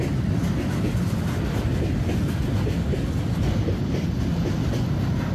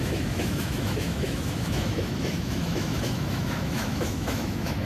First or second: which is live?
first